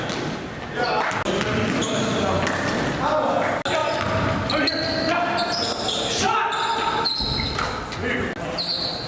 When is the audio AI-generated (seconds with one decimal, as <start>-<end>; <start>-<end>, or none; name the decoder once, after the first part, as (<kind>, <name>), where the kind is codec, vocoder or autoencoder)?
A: none